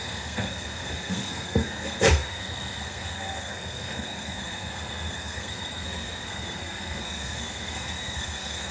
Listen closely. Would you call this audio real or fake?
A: fake